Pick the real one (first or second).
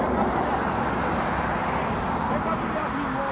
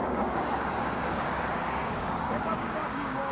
first